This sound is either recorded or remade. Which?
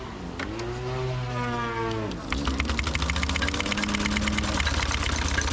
recorded